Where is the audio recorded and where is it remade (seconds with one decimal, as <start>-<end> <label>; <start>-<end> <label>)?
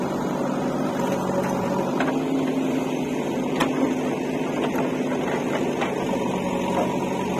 0.0-7.4 recorded